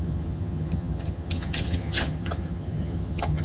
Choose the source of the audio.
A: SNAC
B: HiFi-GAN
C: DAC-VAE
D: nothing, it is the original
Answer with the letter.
B